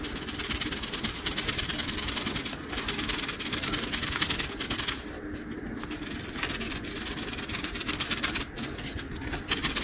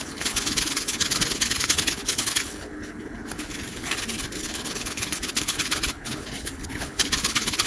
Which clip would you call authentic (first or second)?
first